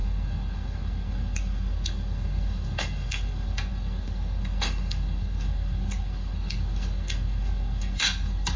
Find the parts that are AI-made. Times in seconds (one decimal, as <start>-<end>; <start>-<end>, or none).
0.0-8.6

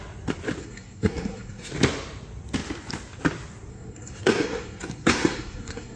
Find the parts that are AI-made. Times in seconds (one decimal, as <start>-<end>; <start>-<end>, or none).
0.6-1.7; 3.7-6.0

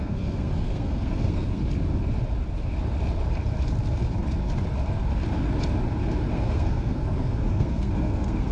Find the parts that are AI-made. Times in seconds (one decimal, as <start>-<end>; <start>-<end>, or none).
0.0-1.6; 6.3-8.5

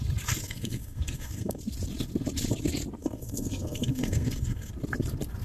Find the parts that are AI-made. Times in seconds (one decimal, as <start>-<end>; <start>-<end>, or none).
0.4-1.6; 3.0-4.7

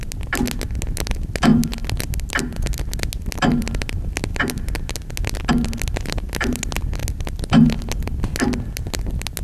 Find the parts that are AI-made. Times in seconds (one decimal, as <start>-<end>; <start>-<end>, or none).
none

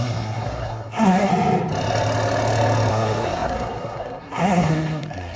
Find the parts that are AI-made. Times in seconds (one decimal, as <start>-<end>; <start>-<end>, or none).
0.0-1.3; 2.9-5.4